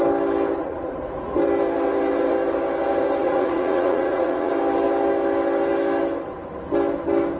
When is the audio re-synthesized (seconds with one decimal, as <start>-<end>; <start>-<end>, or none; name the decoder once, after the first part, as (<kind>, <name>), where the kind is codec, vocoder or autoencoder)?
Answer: 0.6-1.4 (vocoder, Vocos); 3.2-4.5